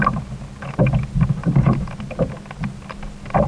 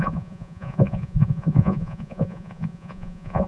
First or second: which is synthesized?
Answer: second